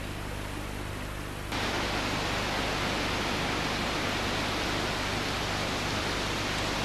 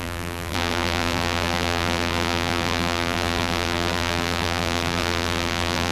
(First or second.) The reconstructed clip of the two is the second